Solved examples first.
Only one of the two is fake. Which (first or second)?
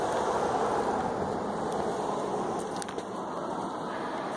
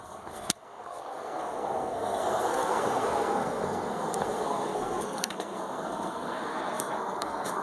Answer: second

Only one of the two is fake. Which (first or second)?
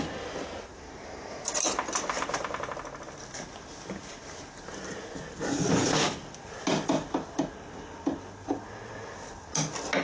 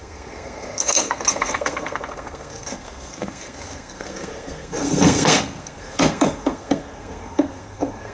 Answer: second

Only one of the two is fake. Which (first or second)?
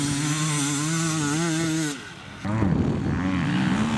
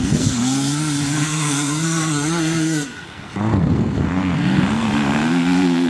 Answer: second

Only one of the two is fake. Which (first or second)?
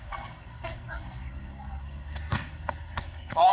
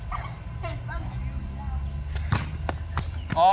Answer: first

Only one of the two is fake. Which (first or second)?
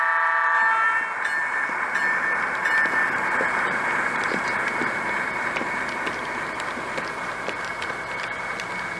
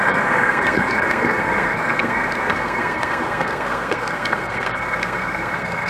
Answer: second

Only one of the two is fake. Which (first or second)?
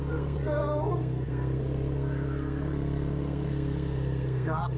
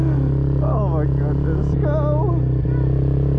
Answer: first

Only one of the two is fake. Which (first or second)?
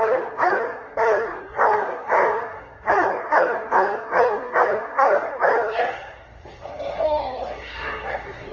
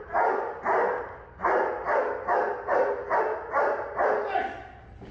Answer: first